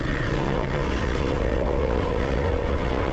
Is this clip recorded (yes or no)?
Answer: no